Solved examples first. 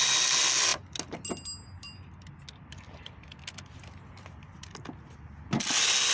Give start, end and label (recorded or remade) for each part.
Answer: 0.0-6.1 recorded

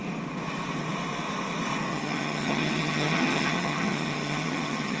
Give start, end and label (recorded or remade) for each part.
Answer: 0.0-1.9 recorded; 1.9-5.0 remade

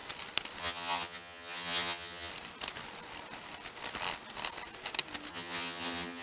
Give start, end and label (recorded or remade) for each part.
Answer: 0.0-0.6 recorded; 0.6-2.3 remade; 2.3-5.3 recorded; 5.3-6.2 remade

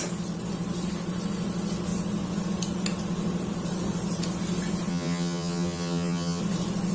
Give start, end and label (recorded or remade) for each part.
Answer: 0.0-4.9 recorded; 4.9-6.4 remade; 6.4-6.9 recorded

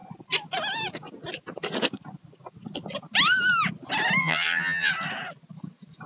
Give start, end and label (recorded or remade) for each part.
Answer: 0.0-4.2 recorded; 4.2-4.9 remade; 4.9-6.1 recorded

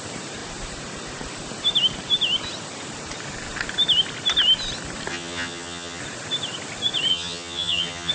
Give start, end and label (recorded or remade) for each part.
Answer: 0.0-5.1 recorded; 5.1-6.0 remade; 6.0-7.1 recorded; 7.1-8.1 remade

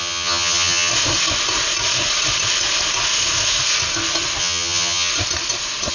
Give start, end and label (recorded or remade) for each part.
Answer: 0.0-0.9 remade; 0.9-4.4 recorded; 4.4-5.1 remade; 5.1-5.9 recorded